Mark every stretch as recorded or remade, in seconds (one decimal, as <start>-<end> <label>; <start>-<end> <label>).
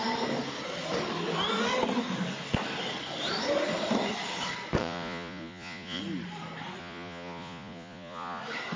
0.0-4.8 recorded; 4.8-6.0 remade; 6.0-6.8 recorded; 6.8-8.4 remade; 8.4-8.8 recorded